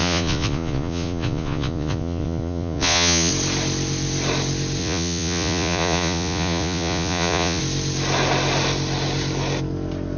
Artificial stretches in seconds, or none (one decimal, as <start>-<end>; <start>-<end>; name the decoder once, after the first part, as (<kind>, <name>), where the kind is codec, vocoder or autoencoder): 0.0-3.3 (vocoder, Vocos); 4.8-7.6

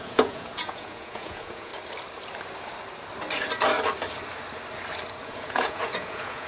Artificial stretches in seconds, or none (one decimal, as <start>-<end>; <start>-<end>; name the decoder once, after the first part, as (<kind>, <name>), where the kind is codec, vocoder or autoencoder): 0.0-1.7 (vocoder, Vocos); 5.2-6.5

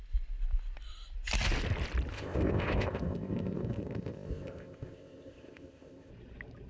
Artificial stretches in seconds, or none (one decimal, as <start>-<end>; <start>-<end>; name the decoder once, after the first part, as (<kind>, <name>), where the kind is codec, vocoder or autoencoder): 2.1-6.1 (codec, ZipCodec)

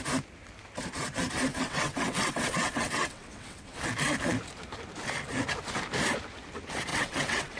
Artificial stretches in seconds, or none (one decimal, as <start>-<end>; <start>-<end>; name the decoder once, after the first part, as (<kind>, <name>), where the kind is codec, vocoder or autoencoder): 1.5-3.8 (vocoder, WaveNeXt); 6.9-7.6

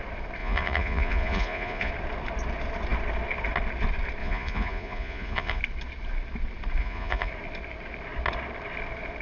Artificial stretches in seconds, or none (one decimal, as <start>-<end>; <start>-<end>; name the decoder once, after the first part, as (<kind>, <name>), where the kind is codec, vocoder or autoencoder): 0.4-1.9 (vocoder, Vocos); 4.2-5.6; 6.8-7.3

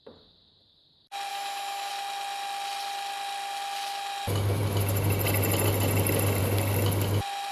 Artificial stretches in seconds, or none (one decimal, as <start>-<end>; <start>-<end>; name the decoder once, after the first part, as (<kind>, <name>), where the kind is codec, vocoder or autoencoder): 1.3-1.9 (autoencoder, DAC-VAE)